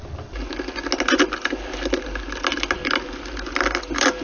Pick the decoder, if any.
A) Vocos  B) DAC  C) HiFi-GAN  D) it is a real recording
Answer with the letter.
D